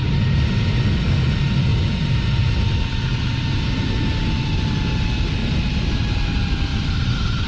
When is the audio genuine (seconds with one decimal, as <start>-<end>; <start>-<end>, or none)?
0.8-1.7; 2.5-5.4; 6.3-6.7